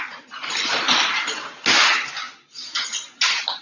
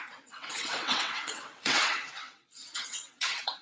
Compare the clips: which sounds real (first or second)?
first